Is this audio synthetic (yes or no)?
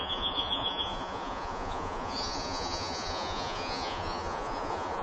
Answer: yes